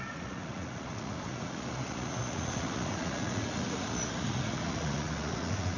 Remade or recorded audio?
remade